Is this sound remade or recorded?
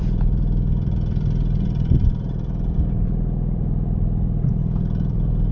remade